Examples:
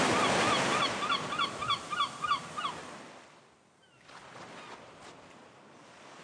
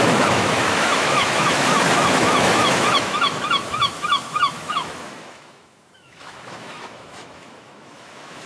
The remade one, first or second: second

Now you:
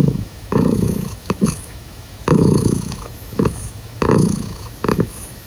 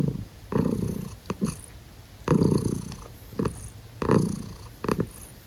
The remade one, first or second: first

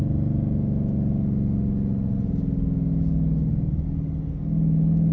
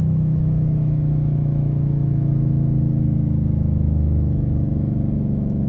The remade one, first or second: second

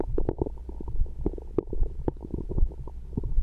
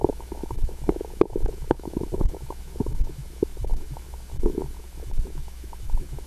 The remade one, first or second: second